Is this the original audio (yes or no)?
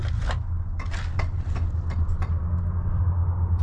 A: yes